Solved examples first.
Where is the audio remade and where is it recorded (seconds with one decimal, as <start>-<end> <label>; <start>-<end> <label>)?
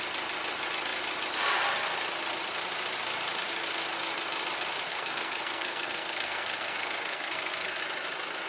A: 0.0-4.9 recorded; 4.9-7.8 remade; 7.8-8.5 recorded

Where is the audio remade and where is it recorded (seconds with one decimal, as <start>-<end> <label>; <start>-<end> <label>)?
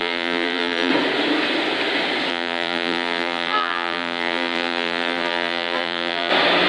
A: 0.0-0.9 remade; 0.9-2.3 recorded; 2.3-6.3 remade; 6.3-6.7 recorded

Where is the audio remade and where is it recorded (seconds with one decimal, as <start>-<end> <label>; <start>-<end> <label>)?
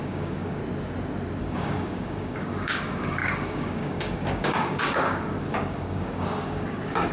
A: 0.0-0.6 remade; 0.6-1.4 recorded; 1.4-7.1 remade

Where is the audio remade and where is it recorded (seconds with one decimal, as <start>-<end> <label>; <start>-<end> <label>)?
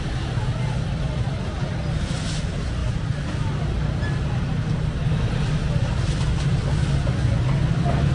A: 0.0-2.8 recorded; 2.8-3.3 remade; 3.3-8.1 recorded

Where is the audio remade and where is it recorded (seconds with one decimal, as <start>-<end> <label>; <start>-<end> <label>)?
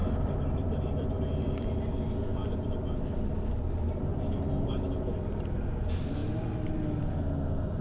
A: 0.0-1.7 remade; 1.7-2.3 recorded; 2.3-4.8 remade; 4.8-7.8 recorded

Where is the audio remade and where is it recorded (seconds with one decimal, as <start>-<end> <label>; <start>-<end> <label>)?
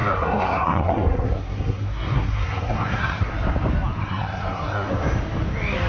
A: 0.0-3.3 remade; 3.3-4.0 recorded; 4.0-4.9 remade; 4.9-5.9 recorded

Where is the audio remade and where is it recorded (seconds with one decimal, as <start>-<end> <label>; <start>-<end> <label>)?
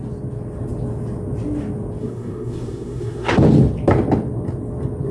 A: 0.0-2.0 recorded; 2.0-3.4 remade; 3.4-5.1 recorded